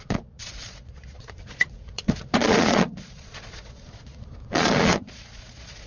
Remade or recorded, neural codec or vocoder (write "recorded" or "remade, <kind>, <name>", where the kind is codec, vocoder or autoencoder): remade, vocoder, Vocos